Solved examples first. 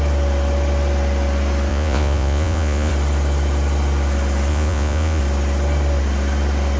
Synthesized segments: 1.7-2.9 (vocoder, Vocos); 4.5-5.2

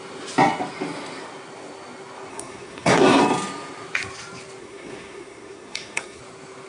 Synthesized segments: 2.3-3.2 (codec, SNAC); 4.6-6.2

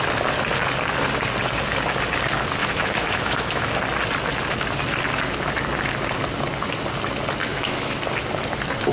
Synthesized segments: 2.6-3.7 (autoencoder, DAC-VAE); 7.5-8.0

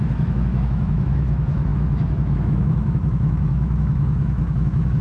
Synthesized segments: 0.0-5.0 (autoencoder, DAC-VAE)